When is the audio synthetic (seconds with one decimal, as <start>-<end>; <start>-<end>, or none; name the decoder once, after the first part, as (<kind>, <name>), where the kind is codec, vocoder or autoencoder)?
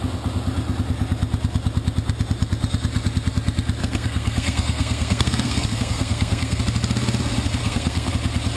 3.8-6.6 (codec, SNAC); 7.6-8.1